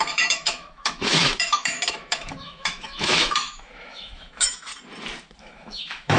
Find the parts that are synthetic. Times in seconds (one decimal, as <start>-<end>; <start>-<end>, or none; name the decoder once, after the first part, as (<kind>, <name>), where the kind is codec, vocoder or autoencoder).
0.0-4.7 (autoencoder, DAC-VAE); 5.4-6.2